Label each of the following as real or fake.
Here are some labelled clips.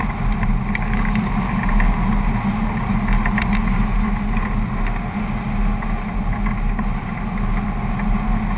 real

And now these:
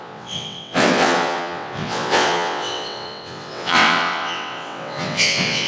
fake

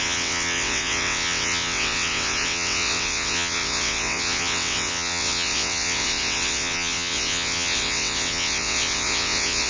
fake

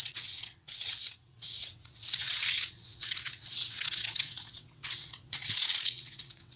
fake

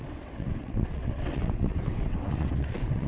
fake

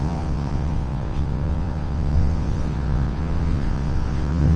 fake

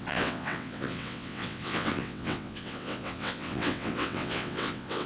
fake